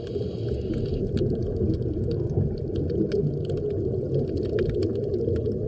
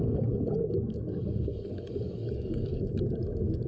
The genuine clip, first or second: first